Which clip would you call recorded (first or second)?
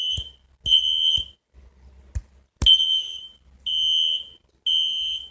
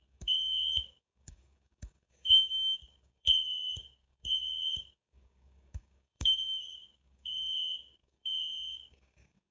first